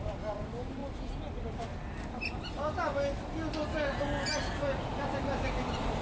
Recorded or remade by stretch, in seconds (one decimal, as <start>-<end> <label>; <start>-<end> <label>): 0.0-6.0 recorded